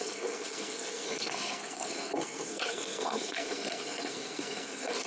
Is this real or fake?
fake